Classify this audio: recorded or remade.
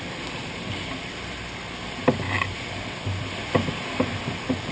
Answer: recorded